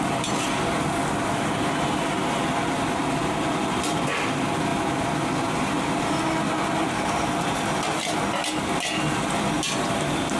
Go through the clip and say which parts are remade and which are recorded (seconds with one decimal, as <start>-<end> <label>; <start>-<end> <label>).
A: 0.0-10.4 recorded